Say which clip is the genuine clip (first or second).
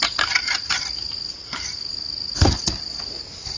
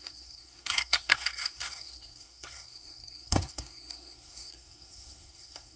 first